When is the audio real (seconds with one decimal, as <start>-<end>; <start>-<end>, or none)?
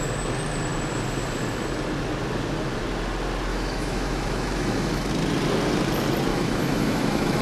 0.0-3.5; 5.1-6.3